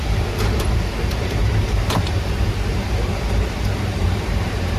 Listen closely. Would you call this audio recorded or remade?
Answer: remade